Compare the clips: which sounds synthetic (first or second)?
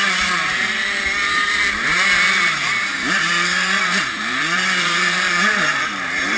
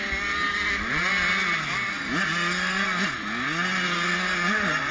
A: first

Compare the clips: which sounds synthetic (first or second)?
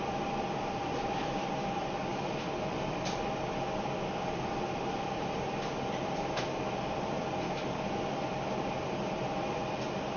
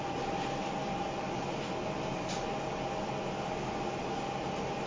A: first